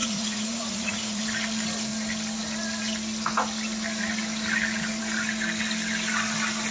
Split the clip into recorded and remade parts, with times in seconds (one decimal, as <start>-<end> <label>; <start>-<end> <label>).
0.0-1.2 remade; 1.2-6.7 recorded